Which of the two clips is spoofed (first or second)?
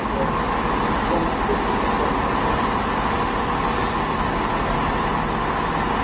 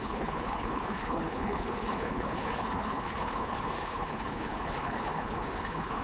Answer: second